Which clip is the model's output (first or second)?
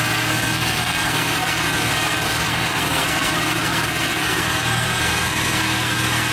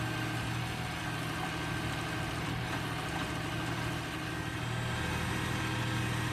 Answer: first